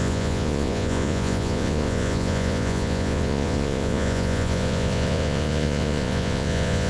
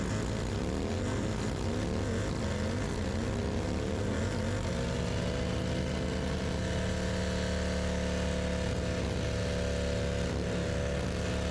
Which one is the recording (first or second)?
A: second